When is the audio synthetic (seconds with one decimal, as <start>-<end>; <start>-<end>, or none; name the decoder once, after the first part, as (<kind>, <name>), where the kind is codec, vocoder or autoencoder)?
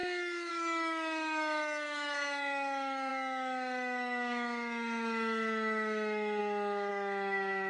0.0-7.7 (autoencoder, DAC-VAE)